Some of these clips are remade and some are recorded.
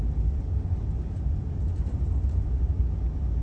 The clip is recorded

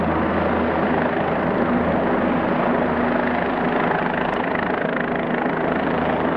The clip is recorded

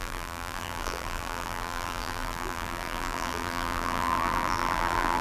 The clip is remade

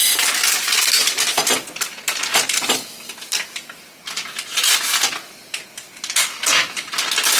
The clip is recorded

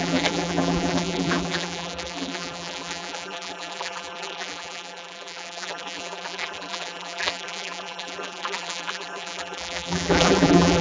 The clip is remade